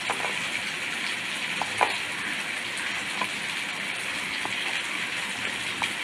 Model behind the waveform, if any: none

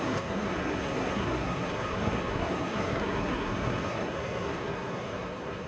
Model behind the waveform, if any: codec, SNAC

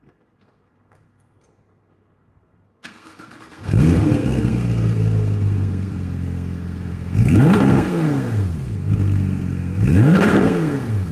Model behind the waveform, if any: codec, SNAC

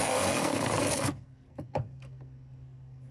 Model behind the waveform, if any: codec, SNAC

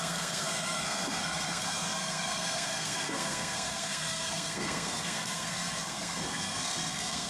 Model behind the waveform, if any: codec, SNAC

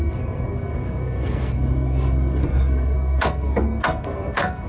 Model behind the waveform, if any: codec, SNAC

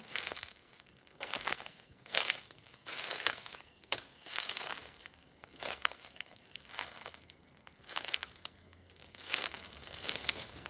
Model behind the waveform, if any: codec, SNAC